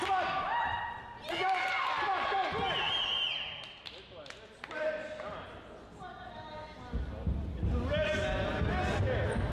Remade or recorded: recorded